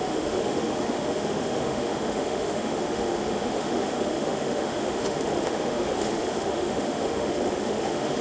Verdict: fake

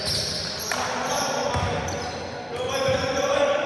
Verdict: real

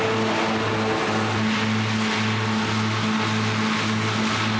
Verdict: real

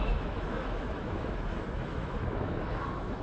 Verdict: fake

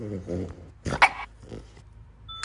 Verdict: real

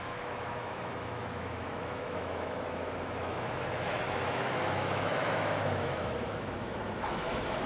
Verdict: fake